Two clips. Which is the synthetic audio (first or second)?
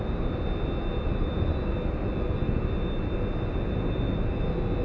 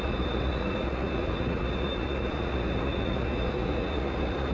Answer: second